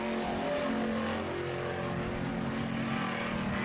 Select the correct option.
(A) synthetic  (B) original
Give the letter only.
B